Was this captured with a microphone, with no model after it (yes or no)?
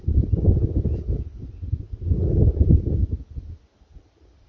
yes